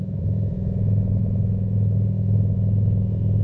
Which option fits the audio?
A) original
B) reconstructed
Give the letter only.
B